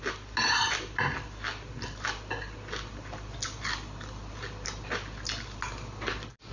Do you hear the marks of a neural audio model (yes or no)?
no